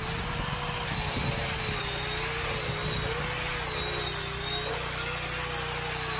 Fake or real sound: real